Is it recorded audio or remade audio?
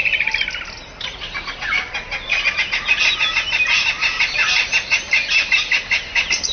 recorded